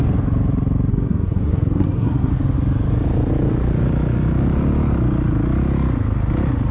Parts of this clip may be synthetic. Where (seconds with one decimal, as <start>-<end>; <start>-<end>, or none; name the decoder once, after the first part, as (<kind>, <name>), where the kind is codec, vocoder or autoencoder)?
0.9-2.3 (codec, SNAC)